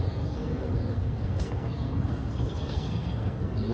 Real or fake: fake